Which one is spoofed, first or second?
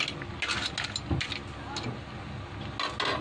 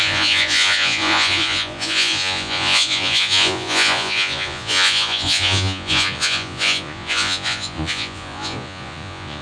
second